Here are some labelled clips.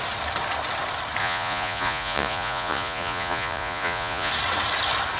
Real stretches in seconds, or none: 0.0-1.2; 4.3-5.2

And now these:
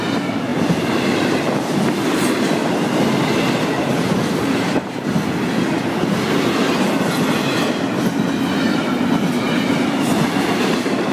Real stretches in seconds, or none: 0.0-0.5; 1.1-3.7; 5.0-11.1

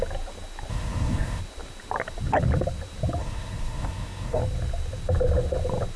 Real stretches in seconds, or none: 0.0-0.7; 1.4-3.2; 4.4-6.0